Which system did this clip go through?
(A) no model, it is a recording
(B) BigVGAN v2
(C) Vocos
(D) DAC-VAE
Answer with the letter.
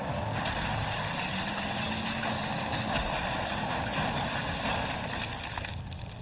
A